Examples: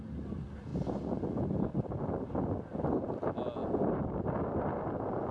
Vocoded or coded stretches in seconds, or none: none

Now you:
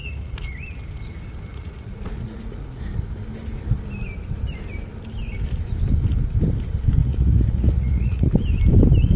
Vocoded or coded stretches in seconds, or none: 0.0-0.5; 1.5-2.8; 7.0-8.3

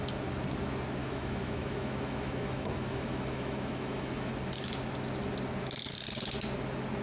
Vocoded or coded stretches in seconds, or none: 1.0-4.3

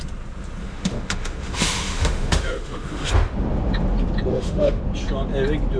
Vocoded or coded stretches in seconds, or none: 0.6-3.1; 4.3-4.8

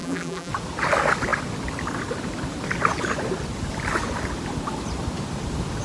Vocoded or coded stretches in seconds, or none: 0.0-0.5

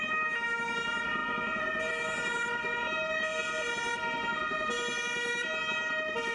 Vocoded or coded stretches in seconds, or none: none

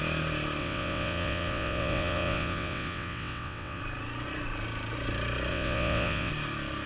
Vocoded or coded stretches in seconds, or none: 0.6-3.8; 5.5-6.3